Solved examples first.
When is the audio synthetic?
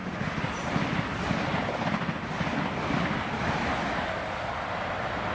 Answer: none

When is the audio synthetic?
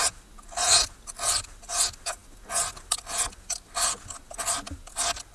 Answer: none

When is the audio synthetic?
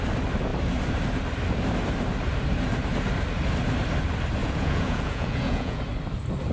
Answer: 4.4-5.8 (vocoder, Vocos)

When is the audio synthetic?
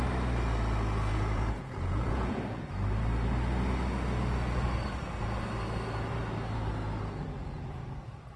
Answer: 1.1-2.6 (vocoder, Vocos)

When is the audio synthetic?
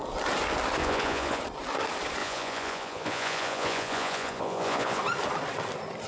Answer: 0.8-1.4 (vocoder, Vocos); 2.2-5.0